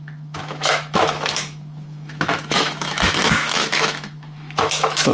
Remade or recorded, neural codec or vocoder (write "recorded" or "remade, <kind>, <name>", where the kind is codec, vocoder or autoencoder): remade, autoencoder, DAC-VAE